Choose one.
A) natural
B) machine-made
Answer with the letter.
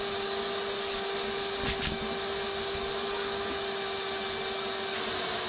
A